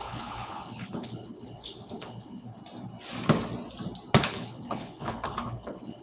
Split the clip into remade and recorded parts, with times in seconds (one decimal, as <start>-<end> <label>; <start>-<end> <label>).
0.0-2.6 remade; 2.6-4.2 recorded; 4.2-6.0 remade